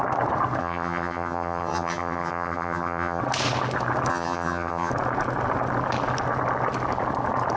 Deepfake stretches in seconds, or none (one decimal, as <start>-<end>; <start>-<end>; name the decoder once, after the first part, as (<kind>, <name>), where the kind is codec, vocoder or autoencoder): 0.6-3.2 (vocoder, HiFi-GAN); 4.1-4.9